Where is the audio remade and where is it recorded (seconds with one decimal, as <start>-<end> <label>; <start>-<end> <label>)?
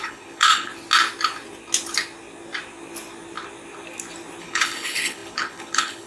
0.0-0.7 remade; 0.7-4.4 recorded; 4.4-6.1 remade